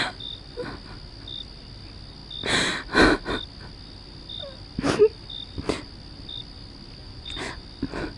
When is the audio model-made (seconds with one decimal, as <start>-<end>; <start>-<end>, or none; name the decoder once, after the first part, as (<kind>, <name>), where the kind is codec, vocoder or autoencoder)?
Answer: 7.0-7.6 (vocoder, Vocos)